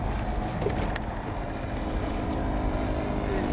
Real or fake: real